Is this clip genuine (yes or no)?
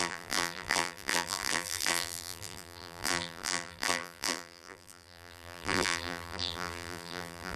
no